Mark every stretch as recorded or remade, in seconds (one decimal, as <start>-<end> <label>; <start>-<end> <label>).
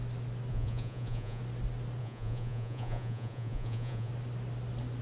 0.0-0.5 recorded; 0.5-1.4 remade; 1.4-2.0 recorded; 2.0-4.1 remade; 4.1-5.0 recorded